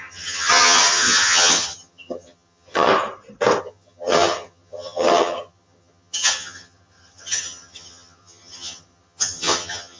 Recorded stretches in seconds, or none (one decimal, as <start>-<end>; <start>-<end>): 2.9-3.6